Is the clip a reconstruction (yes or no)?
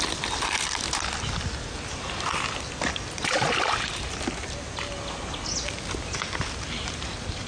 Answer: no